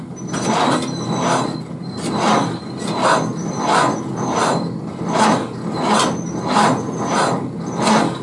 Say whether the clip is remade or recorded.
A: recorded